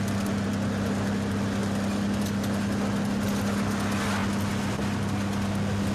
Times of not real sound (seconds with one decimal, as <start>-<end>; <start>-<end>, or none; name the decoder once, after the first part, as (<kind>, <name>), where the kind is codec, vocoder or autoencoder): none